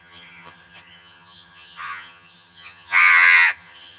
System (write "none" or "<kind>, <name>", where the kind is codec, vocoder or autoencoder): vocoder, HiFi-GAN